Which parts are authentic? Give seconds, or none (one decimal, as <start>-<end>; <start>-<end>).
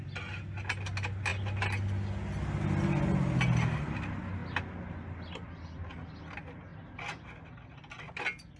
0.0-8.6